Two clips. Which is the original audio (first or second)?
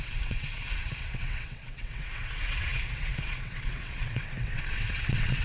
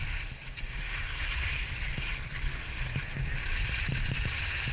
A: second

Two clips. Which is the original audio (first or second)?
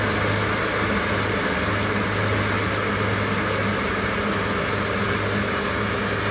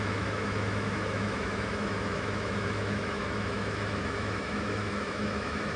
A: first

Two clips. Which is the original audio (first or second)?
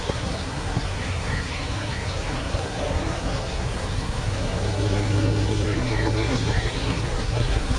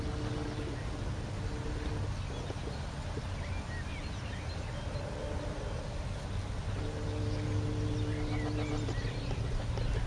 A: second